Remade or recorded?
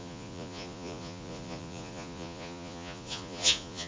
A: remade